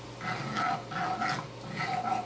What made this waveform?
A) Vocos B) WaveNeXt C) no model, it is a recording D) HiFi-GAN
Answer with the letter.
C